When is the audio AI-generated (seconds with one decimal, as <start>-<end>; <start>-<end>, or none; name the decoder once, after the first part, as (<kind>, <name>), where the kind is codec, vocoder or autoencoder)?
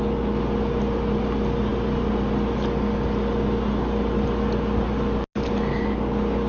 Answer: none